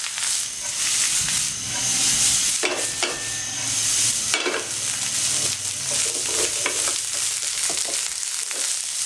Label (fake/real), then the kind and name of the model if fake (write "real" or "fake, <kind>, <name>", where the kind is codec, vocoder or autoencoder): real